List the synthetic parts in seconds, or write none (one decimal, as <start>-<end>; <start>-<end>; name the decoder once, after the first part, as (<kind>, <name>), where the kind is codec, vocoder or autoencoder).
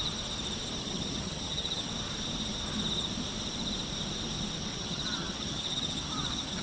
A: 0.8-1.9 (vocoder, HiFi-GAN); 4.7-6.6